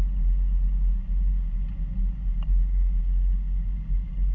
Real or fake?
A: real